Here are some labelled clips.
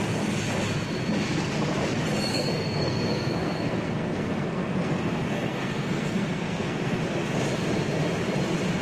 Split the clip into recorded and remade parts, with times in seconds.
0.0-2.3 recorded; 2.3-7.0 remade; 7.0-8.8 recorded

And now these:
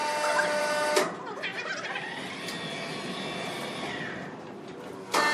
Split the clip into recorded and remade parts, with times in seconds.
0.0-5.3 recorded

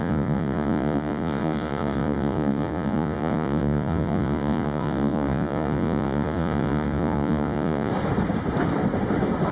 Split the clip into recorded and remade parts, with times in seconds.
0.0-7.9 remade; 7.9-9.5 recorded

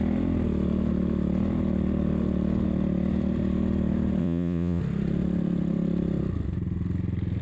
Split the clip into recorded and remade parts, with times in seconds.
0.0-4.2 recorded; 4.2-4.8 remade; 4.8-7.4 recorded

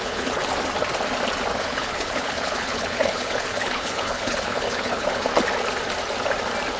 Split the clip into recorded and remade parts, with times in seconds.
0.0-0.4 remade; 0.4-1.5 recorded; 1.5-5.3 remade; 5.3-6.8 recorded

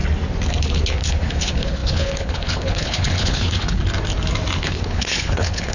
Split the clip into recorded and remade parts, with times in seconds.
0.0-0.6 recorded; 0.6-3.8 remade; 3.8-4.6 recorded; 4.6-5.7 remade